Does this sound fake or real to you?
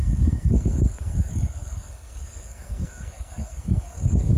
fake